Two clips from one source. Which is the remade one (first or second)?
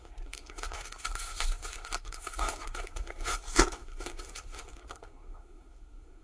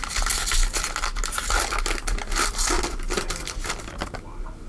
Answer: first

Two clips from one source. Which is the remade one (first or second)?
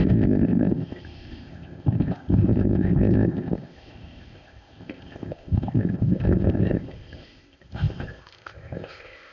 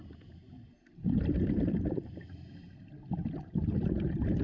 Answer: first